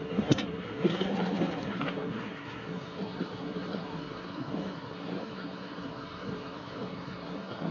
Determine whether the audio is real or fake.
fake